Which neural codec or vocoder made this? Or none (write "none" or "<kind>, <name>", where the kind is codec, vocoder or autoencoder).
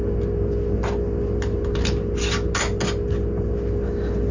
none